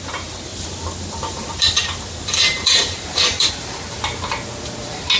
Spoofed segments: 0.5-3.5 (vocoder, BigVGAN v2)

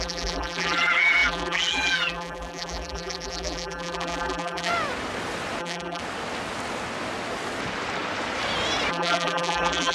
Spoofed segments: 0.0-4.7 (vocoder, BigVGAN v2); 5.6-6.0; 8.9-9.9

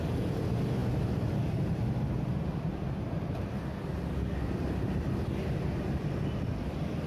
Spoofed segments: none